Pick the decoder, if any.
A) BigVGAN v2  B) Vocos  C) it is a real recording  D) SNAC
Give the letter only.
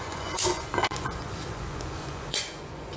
B